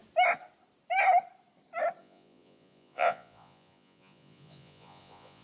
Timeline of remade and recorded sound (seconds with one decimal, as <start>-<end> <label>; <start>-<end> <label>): 0.0-2.0 recorded; 2.0-5.4 remade